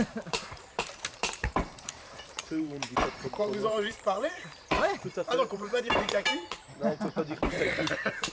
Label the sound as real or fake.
fake